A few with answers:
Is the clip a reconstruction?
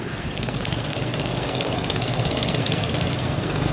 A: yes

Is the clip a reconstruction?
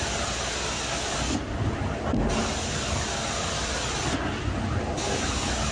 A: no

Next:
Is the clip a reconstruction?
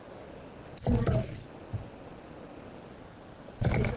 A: no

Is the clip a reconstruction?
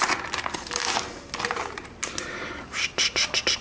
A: no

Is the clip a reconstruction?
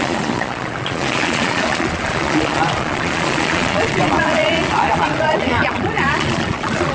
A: yes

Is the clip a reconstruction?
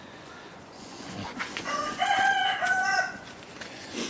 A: yes